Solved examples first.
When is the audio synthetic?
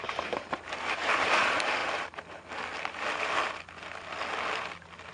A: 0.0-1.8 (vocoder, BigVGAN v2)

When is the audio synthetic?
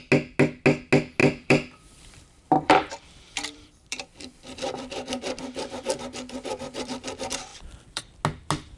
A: 1.2-6.0 (vocoder, BigVGAN v2); 7.5-8.0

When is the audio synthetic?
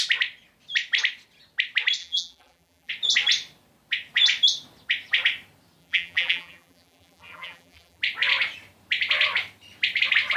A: 2.0-2.9 (vocoder, BigVGAN v2); 5.8-8.0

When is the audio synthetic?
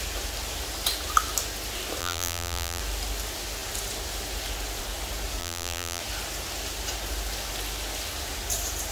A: 2.0-2.8 (vocoder, BigVGAN v2); 5.4-6.0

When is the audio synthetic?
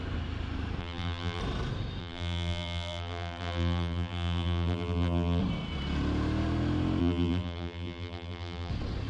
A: 0.8-1.4 (vocoder, BigVGAN v2); 2.0-5.4; 7.0-8.7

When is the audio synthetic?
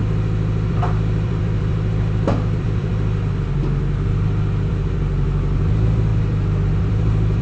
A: 0.7-2.9 (vocoder, BigVGAN v2); 4.7-7.4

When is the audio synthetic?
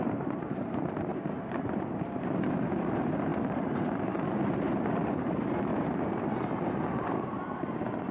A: 0.0-8.1 (vocoder, BigVGAN v2)